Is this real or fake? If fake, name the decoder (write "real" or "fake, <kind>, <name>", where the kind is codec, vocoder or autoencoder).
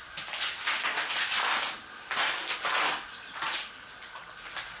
real